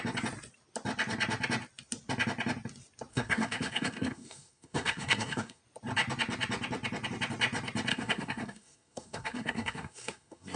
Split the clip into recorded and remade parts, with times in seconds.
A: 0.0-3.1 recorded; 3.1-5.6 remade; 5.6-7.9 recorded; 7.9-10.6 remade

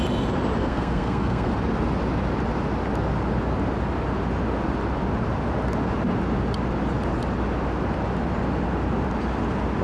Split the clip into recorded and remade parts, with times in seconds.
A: 0.0-0.6 recorded; 0.6-1.5 remade; 1.5-9.8 recorded

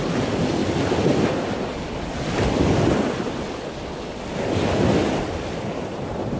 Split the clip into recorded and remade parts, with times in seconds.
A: 0.0-6.4 recorded

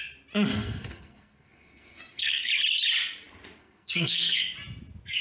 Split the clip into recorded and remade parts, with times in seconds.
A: 0.0-0.5 recorded; 0.5-2.5 remade; 2.5-3.6 recorded; 3.6-4.4 remade; 4.4-5.2 recorded

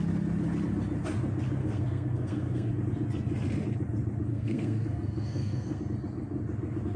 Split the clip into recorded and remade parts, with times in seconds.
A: 0.0-1.6 recorded; 1.6-2.7 remade; 2.7-4.3 recorded; 4.3-5.8 remade; 5.8-7.0 recorded

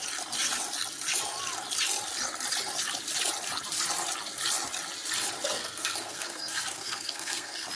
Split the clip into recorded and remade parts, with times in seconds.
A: 0.0-5.6 recorded; 5.6-7.7 remade